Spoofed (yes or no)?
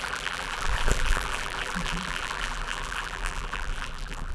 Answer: yes